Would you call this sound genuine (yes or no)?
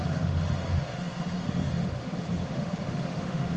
no